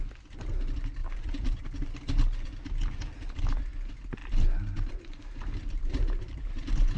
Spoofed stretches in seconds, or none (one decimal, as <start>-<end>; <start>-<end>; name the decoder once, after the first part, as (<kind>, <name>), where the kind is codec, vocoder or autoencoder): 1.0-2.0 (vocoder, BigVGAN v2); 4.2-7.0